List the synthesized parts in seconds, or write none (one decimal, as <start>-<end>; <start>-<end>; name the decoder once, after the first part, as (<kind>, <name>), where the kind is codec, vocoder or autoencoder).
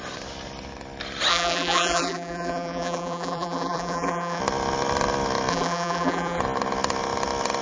1.3-4.4 (vocoder, BigVGAN v2); 5.5-6.4